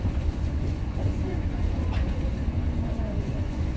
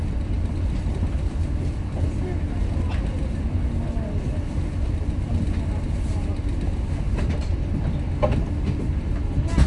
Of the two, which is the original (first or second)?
second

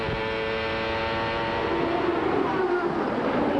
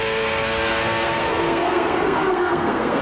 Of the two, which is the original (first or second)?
first